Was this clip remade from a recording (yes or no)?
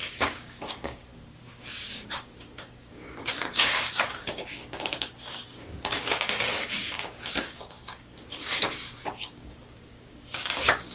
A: yes